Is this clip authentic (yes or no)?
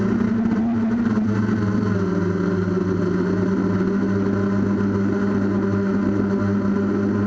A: yes